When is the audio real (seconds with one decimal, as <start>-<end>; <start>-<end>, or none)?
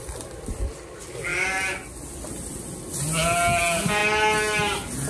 0.0-5.1